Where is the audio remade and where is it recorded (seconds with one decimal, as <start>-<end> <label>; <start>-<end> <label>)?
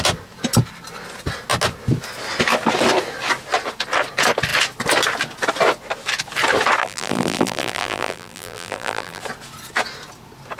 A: 0.0-6.8 recorded; 6.8-9.2 remade; 9.2-10.6 recorded